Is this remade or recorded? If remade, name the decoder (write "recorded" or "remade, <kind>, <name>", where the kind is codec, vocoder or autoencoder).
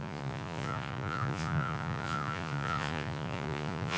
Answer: remade, vocoder, Vocos